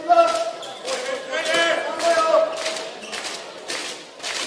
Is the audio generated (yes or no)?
no